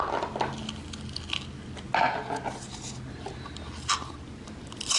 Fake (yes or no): no